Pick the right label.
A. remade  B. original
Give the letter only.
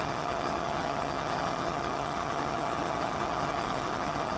A